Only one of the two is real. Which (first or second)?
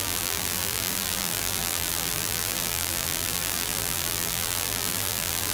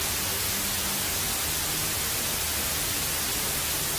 second